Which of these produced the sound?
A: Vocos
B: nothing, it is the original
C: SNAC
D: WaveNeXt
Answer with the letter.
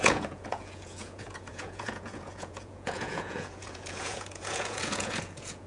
A